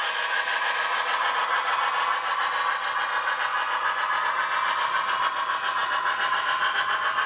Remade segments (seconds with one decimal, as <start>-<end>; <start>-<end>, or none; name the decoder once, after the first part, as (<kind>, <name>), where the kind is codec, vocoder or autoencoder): none